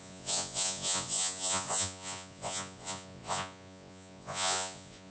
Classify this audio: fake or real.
fake